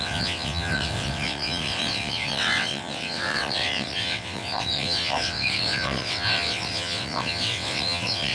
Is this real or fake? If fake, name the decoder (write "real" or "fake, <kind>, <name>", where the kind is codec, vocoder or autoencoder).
fake, vocoder, WaveNeXt